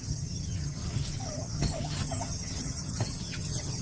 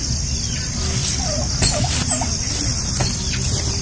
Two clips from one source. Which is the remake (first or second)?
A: first